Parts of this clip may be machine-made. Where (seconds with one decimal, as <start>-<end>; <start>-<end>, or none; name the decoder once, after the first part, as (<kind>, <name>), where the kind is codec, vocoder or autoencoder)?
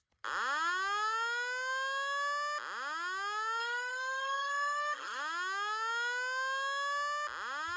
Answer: 3.6-5.2 (codec, SNAC)